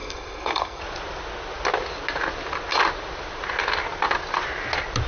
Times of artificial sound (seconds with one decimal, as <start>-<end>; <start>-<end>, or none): 0.0-0.8